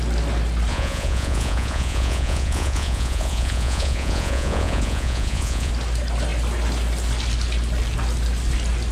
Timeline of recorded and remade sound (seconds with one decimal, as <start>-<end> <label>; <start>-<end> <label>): 0.0-0.7 recorded; 0.7-5.7 remade; 5.7-8.9 recorded